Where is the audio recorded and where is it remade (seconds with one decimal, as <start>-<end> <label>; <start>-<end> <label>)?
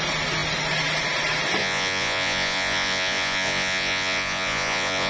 0.0-1.6 recorded; 1.6-5.1 remade